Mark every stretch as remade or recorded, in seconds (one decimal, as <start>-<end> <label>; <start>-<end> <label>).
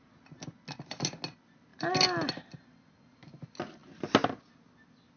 0.0-5.2 recorded